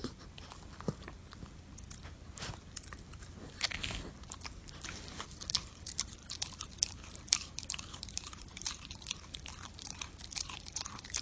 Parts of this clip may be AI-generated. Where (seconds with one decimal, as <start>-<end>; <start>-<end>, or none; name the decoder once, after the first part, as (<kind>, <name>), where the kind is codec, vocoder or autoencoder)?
6.2-11.2 (vocoder, BigVGAN v2)